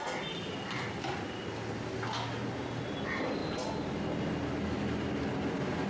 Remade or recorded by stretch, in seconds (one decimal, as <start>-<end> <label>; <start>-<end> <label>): 0.0-5.9 recorded